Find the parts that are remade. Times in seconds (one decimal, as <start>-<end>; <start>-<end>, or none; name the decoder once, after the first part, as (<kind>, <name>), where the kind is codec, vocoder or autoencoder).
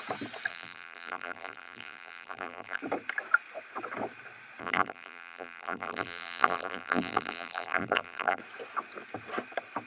0.5-2.8 (vocoder, BigVGAN v2); 4.6-8.4